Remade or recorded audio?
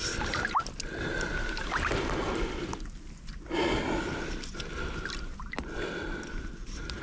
recorded